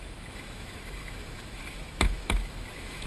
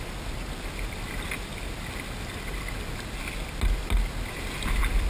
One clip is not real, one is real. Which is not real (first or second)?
first